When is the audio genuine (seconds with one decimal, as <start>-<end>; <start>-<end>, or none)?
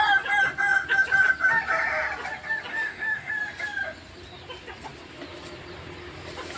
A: 0.0-2.7; 3.3-6.6